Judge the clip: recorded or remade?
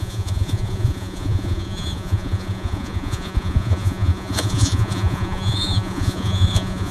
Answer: remade